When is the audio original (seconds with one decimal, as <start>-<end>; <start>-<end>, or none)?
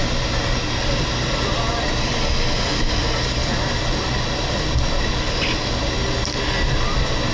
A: 0.8-2.7; 5.8-7.3